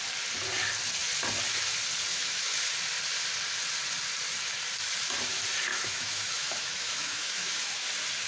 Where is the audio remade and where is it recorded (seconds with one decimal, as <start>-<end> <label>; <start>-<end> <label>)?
0.0-2.1 recorded; 2.1-2.6 remade; 2.6-5.7 recorded; 5.7-7.7 remade; 7.7-8.3 recorded

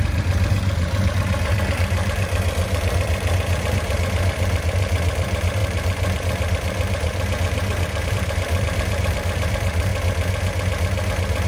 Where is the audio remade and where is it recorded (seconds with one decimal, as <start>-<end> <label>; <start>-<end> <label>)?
0.0-9.9 remade; 9.9-11.5 recorded

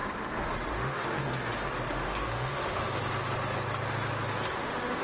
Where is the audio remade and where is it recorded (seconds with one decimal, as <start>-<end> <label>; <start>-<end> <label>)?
0.0-0.7 recorded; 0.7-1.3 remade; 1.3-1.9 recorded; 1.9-2.8 remade; 2.8-4.5 recorded; 4.5-5.0 remade

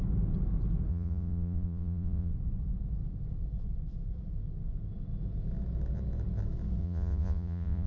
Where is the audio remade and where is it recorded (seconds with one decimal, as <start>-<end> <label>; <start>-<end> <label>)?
0.0-0.9 recorded; 0.9-2.3 remade; 2.3-6.8 recorded; 6.8-7.9 remade

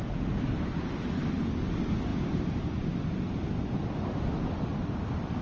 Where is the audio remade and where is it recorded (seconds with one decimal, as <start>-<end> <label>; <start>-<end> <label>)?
0.0-5.4 recorded

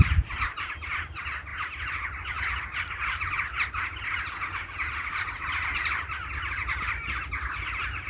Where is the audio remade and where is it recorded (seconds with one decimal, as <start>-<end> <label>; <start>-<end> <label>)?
0.0-8.1 recorded

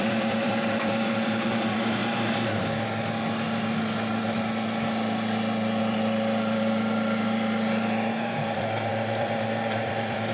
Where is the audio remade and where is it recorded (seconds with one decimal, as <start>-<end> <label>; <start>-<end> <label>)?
0.0-2.0 remade; 2.0-5.8 recorded; 5.8-10.3 remade